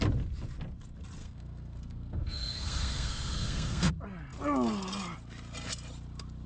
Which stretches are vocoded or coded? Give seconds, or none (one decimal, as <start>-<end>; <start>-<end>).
1.2-3.9